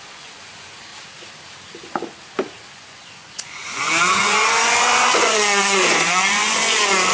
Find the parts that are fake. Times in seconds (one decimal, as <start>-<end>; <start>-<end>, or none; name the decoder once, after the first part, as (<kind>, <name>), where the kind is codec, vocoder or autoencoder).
0.0-0.9 (vocoder, Vocos); 2.7-7.1

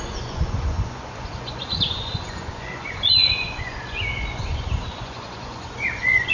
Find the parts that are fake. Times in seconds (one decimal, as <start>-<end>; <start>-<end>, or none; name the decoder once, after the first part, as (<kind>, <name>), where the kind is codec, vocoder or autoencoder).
0.0-6.3 (vocoder, Vocos)

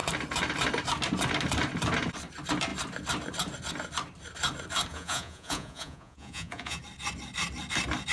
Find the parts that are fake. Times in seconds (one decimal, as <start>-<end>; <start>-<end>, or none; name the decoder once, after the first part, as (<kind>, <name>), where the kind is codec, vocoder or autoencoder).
4.9-6.8 (vocoder, Vocos)

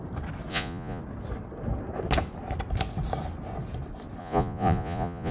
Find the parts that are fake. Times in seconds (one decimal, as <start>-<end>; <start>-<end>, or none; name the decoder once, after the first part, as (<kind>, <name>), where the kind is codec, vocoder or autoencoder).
0.5-1.0 (vocoder, Vocos); 4.2-5.3

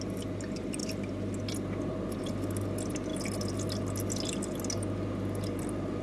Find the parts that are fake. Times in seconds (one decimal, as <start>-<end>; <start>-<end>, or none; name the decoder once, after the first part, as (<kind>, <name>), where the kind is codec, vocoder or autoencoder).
none

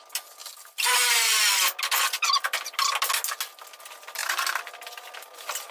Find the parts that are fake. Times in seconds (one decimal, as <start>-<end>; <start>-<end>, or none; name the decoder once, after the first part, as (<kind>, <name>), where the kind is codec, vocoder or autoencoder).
none

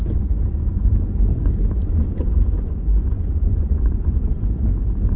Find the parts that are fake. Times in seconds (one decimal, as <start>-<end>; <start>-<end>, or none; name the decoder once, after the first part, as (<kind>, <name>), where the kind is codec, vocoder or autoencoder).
0.0-0.9 (vocoder, Vocos); 1.3-4.4